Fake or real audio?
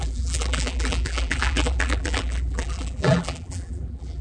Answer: fake